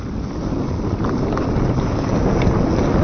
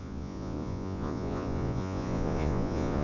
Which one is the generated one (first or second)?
second